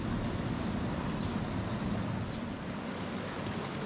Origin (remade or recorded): recorded